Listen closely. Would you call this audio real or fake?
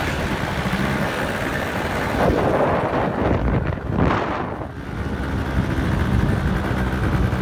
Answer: real